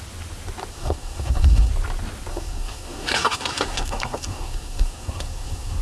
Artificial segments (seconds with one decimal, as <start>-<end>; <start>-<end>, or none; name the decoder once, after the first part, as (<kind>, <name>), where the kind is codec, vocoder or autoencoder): 0.7-1.7 (codec, SNAC); 2.3-5.8